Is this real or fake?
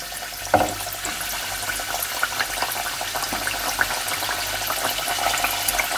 real